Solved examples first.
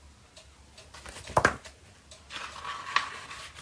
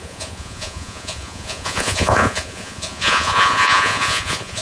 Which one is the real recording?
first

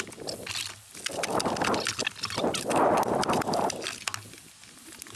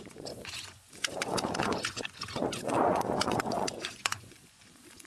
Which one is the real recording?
first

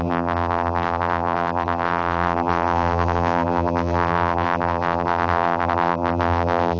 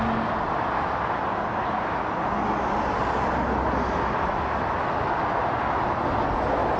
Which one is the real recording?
second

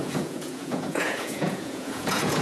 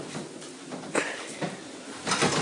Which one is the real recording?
second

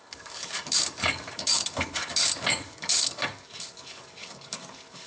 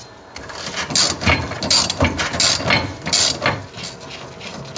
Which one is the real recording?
second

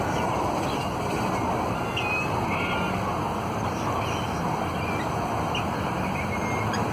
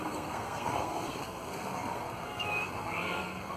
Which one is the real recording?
first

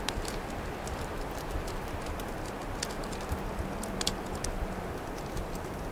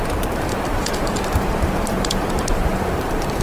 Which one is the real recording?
first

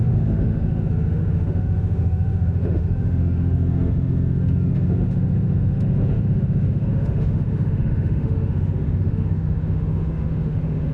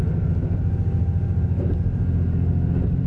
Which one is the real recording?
second